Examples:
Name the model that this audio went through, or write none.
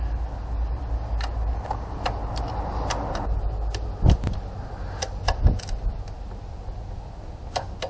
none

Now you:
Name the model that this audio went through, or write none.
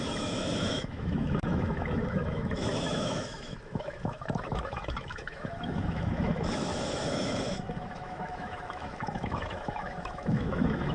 autoencoder, DAC-VAE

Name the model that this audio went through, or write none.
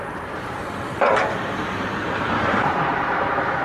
vocoder, BigVGAN v2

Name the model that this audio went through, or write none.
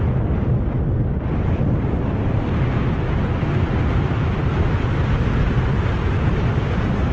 none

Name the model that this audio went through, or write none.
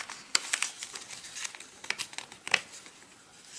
none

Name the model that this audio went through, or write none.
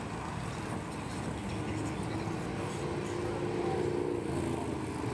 none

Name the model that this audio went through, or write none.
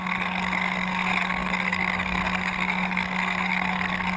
codec, SNAC